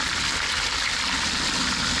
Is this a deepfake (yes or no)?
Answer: no